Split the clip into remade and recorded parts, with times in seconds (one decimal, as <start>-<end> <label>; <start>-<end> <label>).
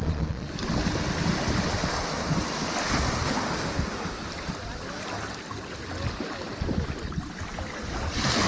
0.0-0.5 remade; 0.5-8.5 recorded